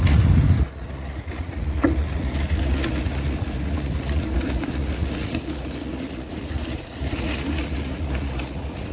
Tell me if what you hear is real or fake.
fake